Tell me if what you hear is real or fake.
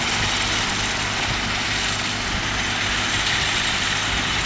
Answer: real